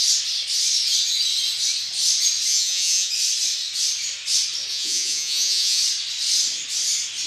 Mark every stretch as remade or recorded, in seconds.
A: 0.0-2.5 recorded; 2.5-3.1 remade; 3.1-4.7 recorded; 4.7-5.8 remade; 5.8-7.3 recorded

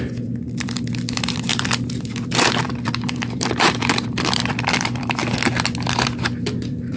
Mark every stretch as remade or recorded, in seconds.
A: 0.0-5.2 remade; 5.2-6.4 recorded; 6.4-7.0 remade